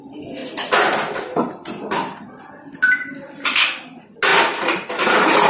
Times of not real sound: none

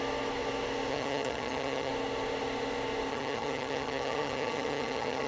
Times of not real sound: 0.9-1.9 (vocoder, HiFi-GAN); 3.1-5.3

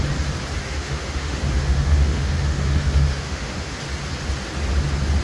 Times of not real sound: 0.6-3.7 (autoencoder, DAC-VAE)

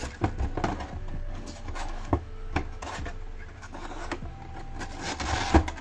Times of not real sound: 1.1-2.8 (codec, DAC); 3.6-4.3

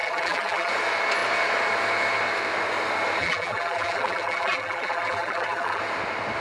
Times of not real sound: 0.0-0.7 (vocoder, BigVGAN v2); 3.2-5.8

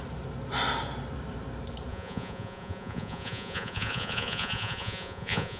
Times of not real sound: 1.9-5.6 (vocoder, Vocos)

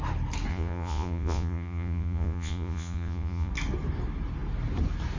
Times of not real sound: 0.5-3.5 (vocoder, Vocos)

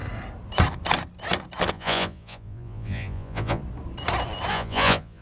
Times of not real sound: 1.7-3.6 (vocoder, Vocos); 4.5-5.2